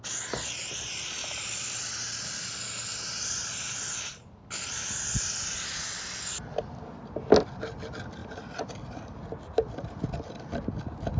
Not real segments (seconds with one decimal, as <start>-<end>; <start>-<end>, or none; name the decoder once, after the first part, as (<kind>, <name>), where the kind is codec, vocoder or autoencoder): 1.2-2.0 (vocoder, BigVGAN v2); 8.2-9.1